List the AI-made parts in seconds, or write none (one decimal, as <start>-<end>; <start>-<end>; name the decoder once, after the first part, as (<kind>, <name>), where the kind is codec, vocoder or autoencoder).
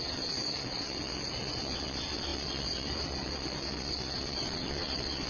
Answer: 0.0-5.3 (vocoder, WaveNeXt)